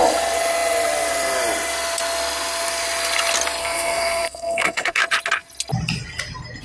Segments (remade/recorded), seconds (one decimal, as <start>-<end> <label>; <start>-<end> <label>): 0.0-3.6 recorded; 3.6-5.0 remade; 5.0-6.6 recorded